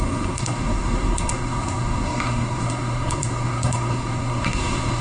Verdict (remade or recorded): remade